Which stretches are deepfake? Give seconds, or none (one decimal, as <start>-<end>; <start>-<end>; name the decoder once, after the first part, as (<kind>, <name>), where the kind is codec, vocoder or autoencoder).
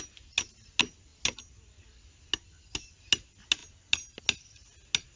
none